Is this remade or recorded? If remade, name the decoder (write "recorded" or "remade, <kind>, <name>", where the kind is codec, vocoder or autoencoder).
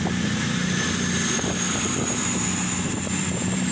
recorded